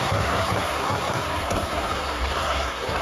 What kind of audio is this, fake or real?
fake